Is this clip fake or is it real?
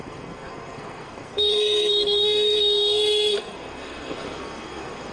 fake